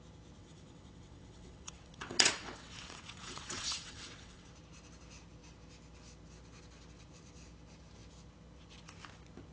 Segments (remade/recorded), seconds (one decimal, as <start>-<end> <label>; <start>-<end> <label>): 0.0-0.4 recorded; 0.4-4.5 remade; 4.5-9.5 recorded